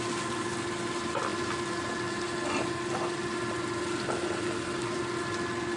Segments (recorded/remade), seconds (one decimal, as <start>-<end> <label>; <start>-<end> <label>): 0.0-5.8 recorded